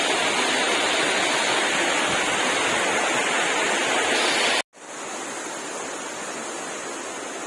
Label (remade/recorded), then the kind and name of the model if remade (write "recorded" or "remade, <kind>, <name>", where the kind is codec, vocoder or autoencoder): recorded